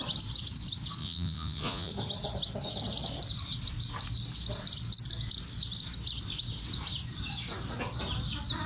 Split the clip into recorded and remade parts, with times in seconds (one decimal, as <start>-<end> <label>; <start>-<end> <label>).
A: 0.0-1.0 recorded; 1.0-1.9 remade; 1.9-8.7 recorded